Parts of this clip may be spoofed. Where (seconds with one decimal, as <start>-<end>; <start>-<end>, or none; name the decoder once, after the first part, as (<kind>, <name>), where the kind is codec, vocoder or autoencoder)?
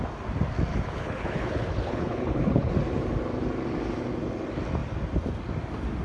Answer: 0.7-2.7 (codec, HILCodec)